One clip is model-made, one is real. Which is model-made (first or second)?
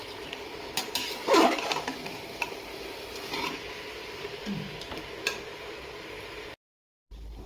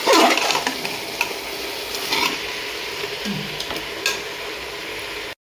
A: first